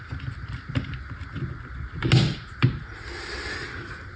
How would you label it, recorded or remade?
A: recorded